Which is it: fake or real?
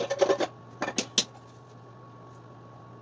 real